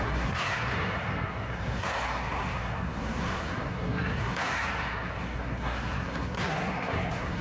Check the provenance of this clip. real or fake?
fake